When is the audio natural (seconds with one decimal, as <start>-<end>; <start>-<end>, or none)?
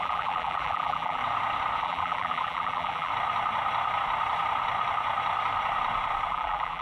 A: 1.2-1.8; 3.1-6.3